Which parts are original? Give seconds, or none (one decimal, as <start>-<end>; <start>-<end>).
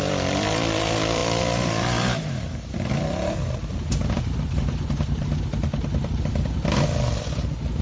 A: none